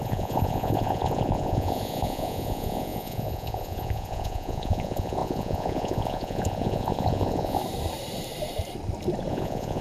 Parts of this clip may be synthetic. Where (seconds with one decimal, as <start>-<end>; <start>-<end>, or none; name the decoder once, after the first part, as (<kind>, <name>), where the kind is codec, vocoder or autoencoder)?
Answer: 0.0-7.6 (vocoder, Vocos); 9.3-9.8